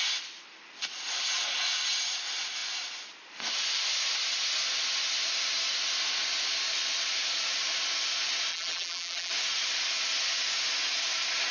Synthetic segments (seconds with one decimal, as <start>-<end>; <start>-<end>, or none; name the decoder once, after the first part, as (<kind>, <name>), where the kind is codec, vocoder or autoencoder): 8.5-9.3 (vocoder, BigVGAN v2)